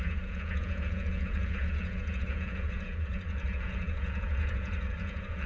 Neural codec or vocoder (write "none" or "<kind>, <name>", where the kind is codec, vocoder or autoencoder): vocoder, Vocos